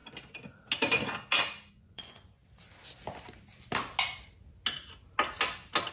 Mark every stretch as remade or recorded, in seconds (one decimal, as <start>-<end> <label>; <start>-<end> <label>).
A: 0.0-1.7 recorded; 1.7-2.4 remade; 2.4-5.9 recorded